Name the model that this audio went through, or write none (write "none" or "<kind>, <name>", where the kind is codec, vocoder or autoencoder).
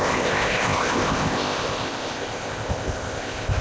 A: codec, ZipCodec